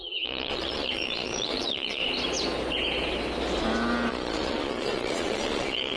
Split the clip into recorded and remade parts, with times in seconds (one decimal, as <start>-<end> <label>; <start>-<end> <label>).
0.0-2.0 remade; 2.0-4.1 recorded; 4.1-6.0 remade